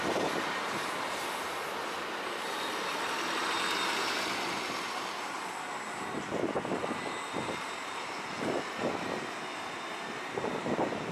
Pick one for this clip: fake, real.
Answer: real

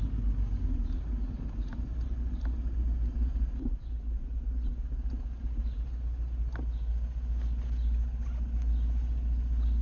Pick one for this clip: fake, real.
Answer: real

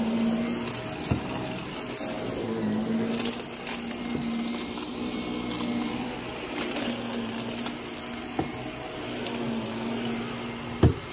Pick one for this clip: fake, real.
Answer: real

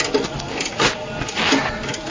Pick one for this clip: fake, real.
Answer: real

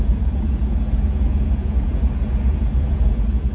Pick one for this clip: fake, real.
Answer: fake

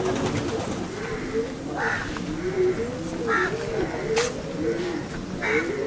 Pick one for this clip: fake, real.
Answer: real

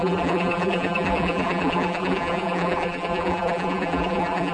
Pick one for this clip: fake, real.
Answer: fake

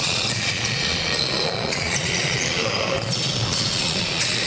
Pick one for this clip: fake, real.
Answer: fake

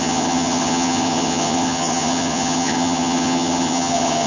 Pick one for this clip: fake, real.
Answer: fake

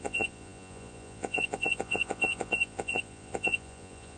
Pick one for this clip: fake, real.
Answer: fake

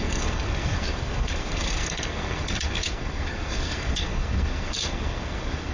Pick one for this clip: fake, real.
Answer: fake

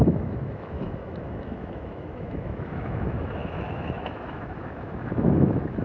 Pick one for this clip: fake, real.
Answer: fake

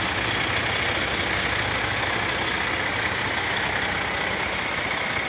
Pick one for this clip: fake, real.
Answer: real